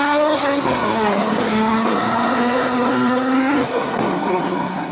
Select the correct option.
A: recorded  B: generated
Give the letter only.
B